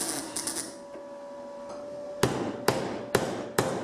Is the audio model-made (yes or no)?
no